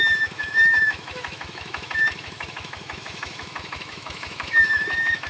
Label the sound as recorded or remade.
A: remade